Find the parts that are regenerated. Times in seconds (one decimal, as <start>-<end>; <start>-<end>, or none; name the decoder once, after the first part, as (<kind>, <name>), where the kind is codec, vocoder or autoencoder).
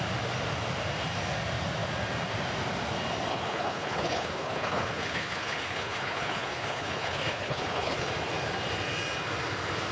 3.3-8.1 (codec, HILCodec)